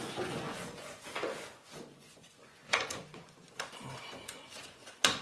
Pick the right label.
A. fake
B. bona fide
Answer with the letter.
A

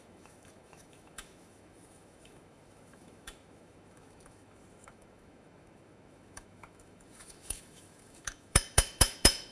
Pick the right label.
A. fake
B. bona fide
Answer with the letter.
A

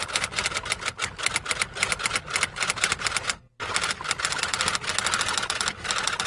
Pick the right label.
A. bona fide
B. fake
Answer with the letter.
A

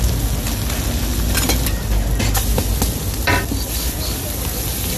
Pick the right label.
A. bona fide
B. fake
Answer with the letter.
A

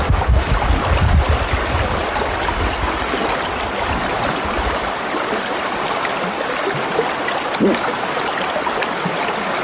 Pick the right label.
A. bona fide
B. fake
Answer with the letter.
A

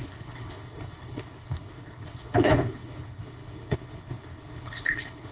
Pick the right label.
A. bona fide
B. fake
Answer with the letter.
B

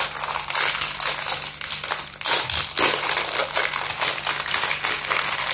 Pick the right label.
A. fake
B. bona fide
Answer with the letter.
B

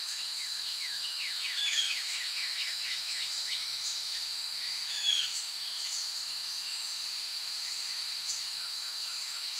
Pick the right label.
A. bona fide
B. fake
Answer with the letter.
B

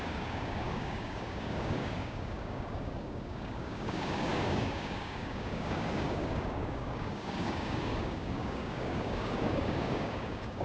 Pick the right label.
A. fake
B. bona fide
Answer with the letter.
A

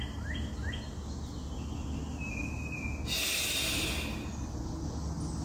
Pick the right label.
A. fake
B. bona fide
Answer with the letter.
B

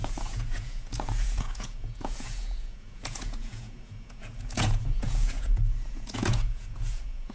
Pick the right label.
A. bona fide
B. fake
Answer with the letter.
B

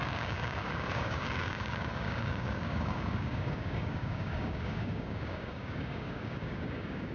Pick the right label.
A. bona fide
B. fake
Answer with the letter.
B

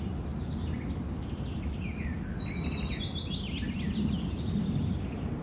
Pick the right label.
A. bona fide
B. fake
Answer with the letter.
A